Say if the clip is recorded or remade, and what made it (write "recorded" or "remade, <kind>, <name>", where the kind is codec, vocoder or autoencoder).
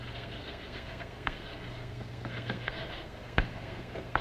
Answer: remade, codec, SNAC